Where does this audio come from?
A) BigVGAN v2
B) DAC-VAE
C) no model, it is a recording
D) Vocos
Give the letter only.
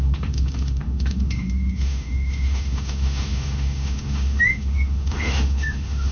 B